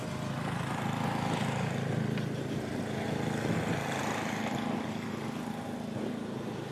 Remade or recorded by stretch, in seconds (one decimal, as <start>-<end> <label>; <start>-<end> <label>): 0.0-6.7 recorded